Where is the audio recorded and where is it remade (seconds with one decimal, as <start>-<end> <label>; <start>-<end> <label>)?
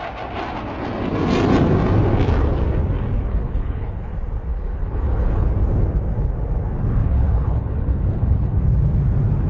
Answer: 0.0-3.3 recorded; 3.3-4.1 remade; 4.1-4.5 recorded; 4.5-5.5 remade; 5.5-7.0 recorded; 7.0-8.6 remade; 8.6-9.5 recorded